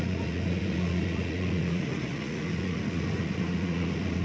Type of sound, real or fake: fake